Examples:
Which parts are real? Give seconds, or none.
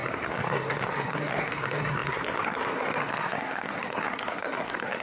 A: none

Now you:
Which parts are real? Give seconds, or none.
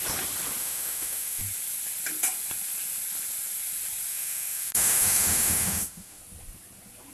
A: 0.0-0.6; 1.4-4.1; 6.2-7.1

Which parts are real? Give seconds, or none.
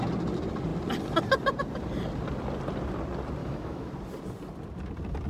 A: 0.0-3.4; 3.9-5.3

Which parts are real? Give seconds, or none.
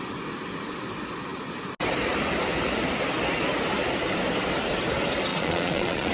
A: 0.0-5.3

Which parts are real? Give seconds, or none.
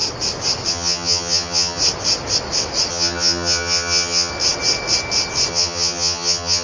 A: 0.0-0.7; 1.8-2.9; 4.3-5.5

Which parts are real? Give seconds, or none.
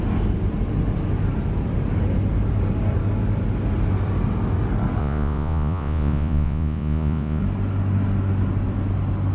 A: 0.0-5.0; 7.4-9.3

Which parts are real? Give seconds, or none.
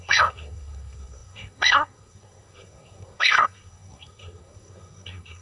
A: none